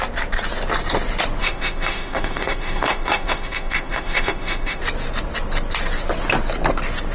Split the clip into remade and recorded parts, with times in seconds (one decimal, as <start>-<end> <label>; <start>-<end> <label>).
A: 0.0-1.4 recorded; 1.4-4.8 remade; 4.8-7.1 recorded